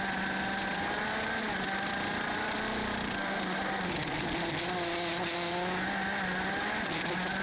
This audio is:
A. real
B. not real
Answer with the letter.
B